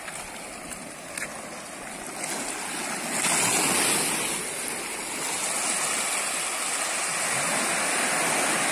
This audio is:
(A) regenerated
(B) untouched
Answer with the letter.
B